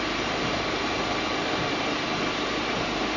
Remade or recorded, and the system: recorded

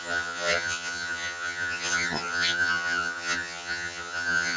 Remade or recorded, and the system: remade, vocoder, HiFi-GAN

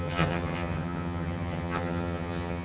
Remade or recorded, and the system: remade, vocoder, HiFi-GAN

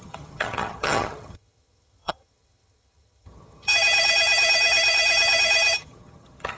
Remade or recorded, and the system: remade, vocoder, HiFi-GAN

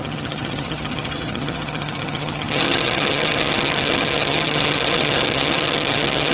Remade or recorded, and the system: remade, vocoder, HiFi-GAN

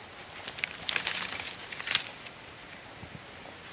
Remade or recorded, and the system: recorded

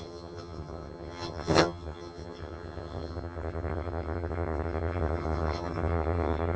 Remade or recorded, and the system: remade, vocoder, HiFi-GAN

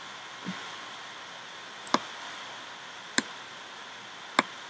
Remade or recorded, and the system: recorded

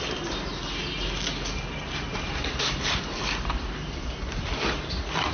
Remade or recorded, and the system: recorded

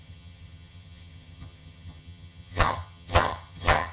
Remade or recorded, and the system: remade, vocoder, HiFi-GAN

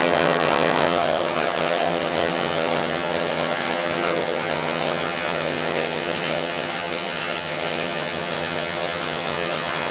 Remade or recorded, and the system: remade, vocoder, HiFi-GAN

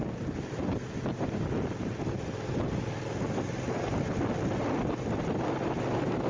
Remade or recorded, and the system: recorded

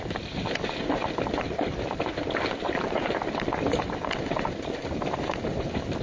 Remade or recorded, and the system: recorded